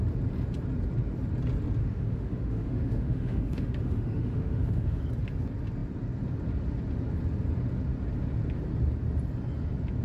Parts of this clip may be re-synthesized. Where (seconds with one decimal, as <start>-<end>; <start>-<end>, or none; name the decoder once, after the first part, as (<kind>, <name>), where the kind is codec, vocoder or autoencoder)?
1.8-5.0 (autoencoder, DAC-VAE)

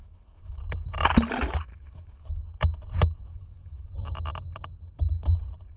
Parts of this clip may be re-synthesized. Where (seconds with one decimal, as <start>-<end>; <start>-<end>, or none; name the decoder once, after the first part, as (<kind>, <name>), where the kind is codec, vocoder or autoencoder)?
0.0-0.6 (autoencoder, DAC-VAE); 1.7-2.4; 3.3-3.9

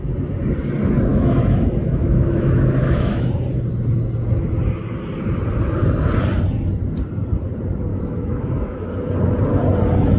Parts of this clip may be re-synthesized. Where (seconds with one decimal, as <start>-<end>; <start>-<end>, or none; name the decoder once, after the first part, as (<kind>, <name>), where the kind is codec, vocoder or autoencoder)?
1.1-3.3 (autoencoder, DAC-VAE); 7.9-8.9

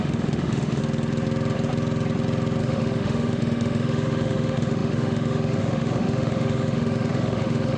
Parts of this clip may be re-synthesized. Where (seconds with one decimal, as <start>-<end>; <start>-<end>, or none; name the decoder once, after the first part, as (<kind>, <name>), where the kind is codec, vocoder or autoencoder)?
0.0-0.8 (autoencoder, DAC-VAE); 2.6-7.8

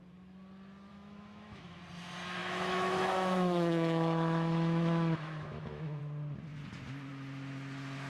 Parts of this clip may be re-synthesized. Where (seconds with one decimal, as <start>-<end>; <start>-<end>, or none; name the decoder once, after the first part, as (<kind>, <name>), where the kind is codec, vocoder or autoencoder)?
0.9-1.8 (autoencoder, DAC-VAE); 2.4-6.0